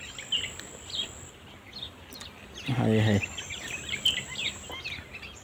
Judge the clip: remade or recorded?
recorded